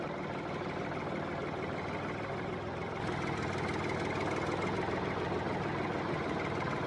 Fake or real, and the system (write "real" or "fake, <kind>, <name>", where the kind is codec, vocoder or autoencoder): real